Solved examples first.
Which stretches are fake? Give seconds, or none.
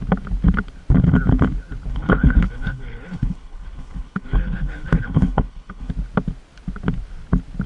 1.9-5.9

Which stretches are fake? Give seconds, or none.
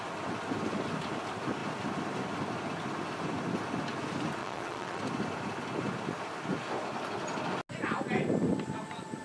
4.4-5.0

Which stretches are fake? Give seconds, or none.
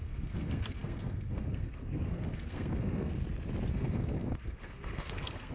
0.0-3.1; 3.7-5.5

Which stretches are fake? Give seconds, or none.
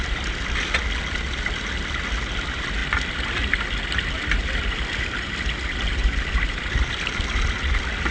none